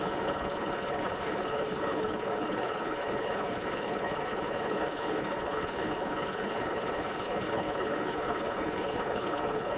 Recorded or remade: remade